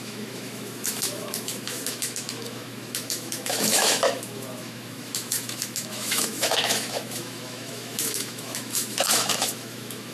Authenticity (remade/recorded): remade